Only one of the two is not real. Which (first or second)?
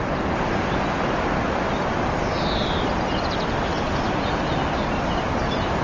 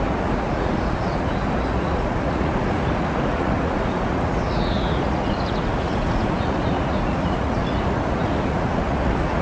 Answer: second